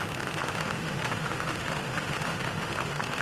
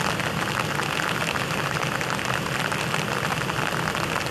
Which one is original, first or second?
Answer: second